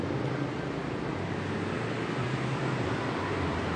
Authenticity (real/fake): real